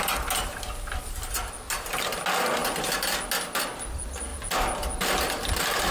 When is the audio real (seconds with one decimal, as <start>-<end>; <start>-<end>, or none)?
0.0-5.9